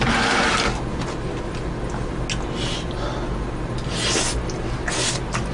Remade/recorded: recorded